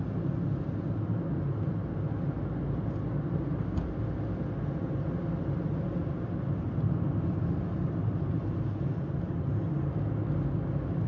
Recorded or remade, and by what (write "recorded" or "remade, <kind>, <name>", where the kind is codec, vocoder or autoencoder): recorded